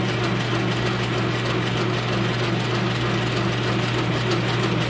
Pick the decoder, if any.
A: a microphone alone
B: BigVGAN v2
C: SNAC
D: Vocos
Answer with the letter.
A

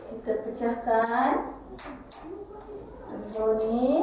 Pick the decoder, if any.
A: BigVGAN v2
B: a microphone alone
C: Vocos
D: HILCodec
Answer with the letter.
B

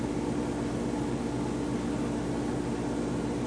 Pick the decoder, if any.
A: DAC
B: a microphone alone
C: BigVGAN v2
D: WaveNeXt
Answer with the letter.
B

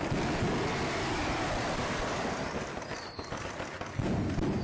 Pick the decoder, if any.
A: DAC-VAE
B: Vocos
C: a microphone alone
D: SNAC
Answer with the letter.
C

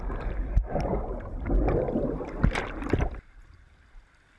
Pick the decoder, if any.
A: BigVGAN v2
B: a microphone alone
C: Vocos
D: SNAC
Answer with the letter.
B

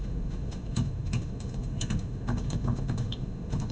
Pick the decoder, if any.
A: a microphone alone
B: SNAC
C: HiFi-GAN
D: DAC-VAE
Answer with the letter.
D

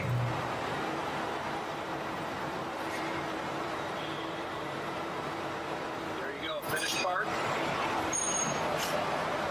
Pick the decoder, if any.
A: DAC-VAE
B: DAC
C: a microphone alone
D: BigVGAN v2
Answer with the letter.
D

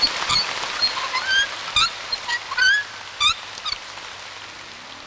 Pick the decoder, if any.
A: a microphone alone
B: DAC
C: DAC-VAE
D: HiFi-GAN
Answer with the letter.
A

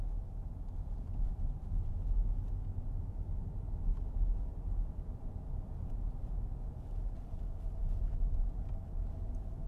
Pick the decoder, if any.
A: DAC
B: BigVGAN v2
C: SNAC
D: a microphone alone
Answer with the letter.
D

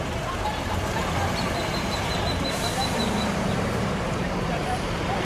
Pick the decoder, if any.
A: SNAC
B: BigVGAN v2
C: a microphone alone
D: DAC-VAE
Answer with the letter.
B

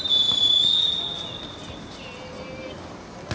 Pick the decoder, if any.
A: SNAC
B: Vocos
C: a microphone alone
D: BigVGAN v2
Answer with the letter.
C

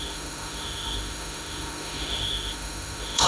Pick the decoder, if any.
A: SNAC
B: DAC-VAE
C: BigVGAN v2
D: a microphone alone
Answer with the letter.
B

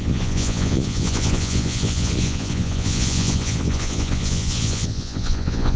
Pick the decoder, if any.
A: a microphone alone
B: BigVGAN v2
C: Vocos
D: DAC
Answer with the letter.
C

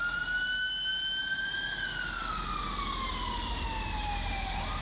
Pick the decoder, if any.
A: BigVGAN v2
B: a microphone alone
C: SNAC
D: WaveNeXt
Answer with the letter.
B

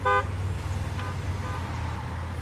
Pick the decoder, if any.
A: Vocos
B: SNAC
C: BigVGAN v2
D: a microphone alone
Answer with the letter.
D